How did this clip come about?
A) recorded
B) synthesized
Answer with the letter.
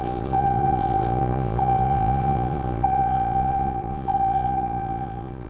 B